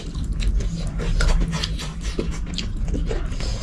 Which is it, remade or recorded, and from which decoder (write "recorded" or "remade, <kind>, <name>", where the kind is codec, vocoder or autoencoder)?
recorded